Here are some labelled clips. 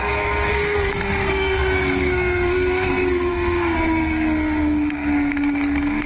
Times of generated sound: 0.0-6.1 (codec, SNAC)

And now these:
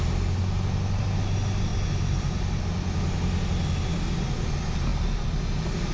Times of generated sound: 1.7-2.6 (vocoder, BigVGAN v2)

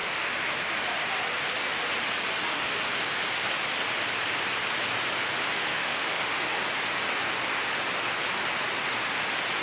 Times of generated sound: 2.5-3.0 (autoencoder, DAC-VAE); 5.4-6.6

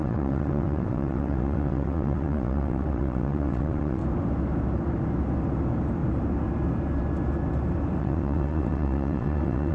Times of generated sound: 0.0-4.0 (vocoder, WaveNeXt); 8.0-9.7

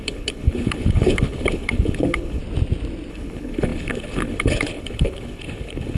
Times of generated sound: 0.0-2.4 (codec, HILCodec); 3.1-6.0

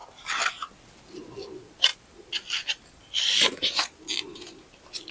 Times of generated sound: none

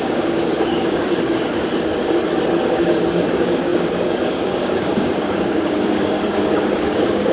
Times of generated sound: 0.0-2.2 (codec, DAC); 2.7-7.3

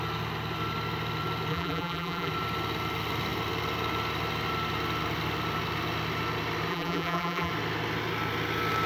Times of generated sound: 1.5-2.3 (vocoder, BigVGAN v2); 6.7-7.5